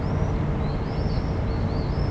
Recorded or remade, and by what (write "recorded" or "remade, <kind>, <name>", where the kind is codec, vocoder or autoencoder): recorded